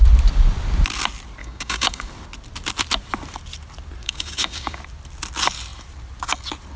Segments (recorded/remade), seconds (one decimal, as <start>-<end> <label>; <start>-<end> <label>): 0.0-1.4 recorded; 1.4-2.1 remade; 2.1-4.0 recorded; 4.0-4.8 remade; 4.8-6.8 recorded